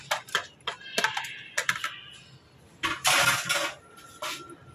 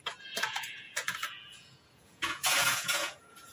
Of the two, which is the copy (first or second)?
second